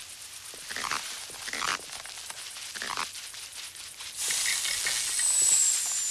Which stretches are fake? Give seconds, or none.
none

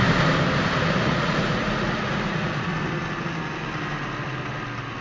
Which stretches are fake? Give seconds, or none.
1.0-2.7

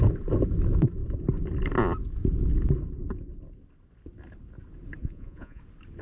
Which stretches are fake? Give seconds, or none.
5.0-5.6